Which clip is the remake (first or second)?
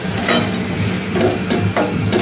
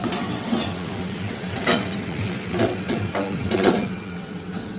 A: second